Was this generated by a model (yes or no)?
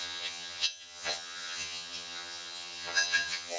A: yes